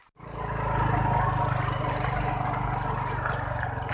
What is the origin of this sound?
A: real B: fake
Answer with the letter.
A